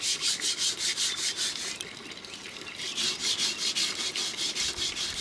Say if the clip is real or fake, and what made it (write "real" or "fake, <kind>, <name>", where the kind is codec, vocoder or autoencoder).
real